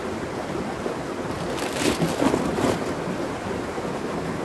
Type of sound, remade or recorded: recorded